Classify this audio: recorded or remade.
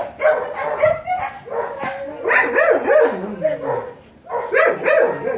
recorded